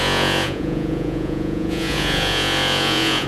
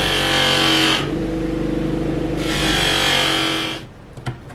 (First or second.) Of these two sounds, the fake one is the first